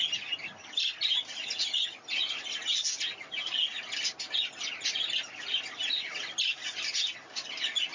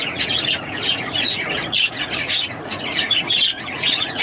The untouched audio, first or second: first